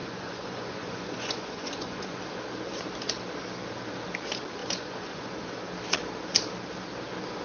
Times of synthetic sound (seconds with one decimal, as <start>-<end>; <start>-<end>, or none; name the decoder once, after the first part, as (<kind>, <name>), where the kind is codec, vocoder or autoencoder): 0.0-2.2 (vocoder, Vocos); 4.6-5.3